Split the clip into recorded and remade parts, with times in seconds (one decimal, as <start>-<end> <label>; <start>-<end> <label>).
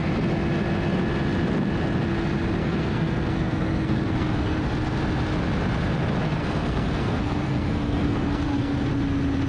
0.0-2.6 recorded; 2.6-4.6 remade; 4.6-6.4 recorded; 6.4-8.9 remade; 8.9-9.5 recorded